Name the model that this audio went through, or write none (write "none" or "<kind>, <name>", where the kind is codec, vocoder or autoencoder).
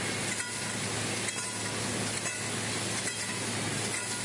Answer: none